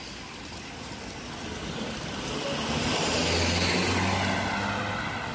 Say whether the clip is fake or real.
real